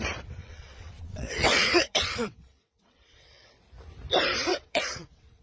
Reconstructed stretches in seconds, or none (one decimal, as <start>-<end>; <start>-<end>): 0.4-3.6; 4.5-5.4

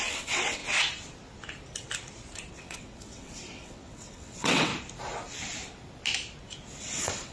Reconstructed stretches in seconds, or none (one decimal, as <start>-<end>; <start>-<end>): 0.0-0.6; 2.5-4.7; 6.8-7.3

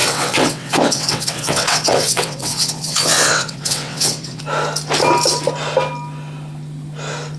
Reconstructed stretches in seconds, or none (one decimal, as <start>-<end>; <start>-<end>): 0.0-4.4

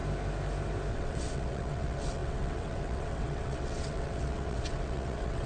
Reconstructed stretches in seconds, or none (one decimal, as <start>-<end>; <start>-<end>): 0.9-5.5

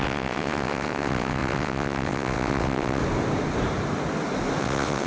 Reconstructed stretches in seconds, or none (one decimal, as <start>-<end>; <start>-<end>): 0.0-3.0; 4.6-5.1

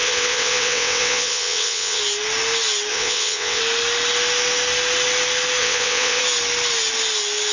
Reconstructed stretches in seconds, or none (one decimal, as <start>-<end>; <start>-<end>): 0.0-2.0; 2.9-3.6; 5.6-6.2

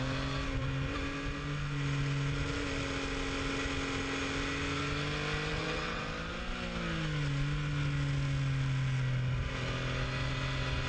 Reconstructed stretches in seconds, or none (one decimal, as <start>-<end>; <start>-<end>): 5.5-6.0

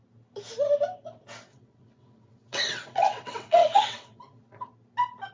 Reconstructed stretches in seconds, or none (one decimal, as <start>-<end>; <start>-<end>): 1.5-4.7